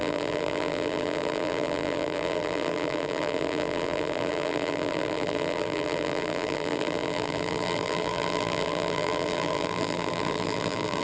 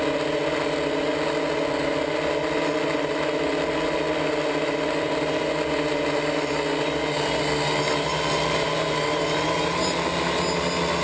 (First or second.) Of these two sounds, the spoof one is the first